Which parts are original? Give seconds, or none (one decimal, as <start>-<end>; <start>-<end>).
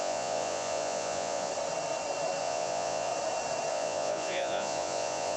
1.5-2.4; 3.1-3.7